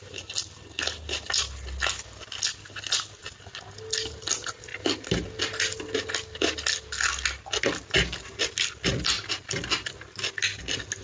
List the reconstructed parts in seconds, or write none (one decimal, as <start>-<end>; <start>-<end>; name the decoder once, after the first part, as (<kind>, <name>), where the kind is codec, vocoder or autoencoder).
none